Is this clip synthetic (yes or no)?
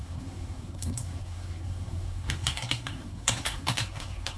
yes